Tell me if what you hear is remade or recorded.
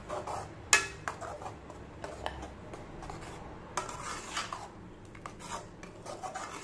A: recorded